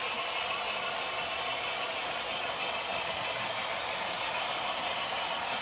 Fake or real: real